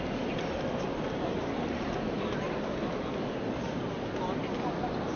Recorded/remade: recorded